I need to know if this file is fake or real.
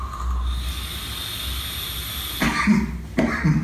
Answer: real